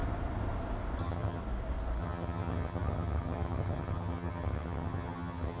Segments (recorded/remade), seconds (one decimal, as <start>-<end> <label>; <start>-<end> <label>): 0.0-1.0 recorded; 1.0-1.4 remade; 1.4-2.0 recorded; 2.0-5.6 remade